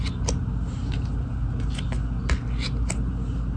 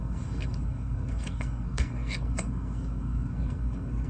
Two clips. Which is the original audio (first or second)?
first